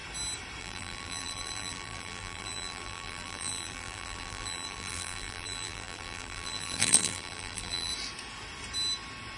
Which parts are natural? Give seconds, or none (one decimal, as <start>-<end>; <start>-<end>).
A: 0.0-0.6; 7.9-9.4

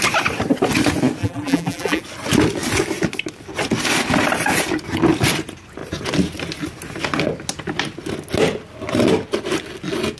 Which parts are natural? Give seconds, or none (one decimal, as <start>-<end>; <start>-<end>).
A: 0.0-1.2; 2.0-10.2